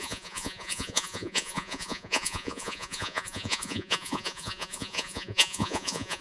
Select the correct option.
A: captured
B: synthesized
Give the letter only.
B